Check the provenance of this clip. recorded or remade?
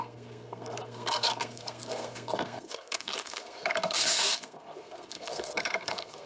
remade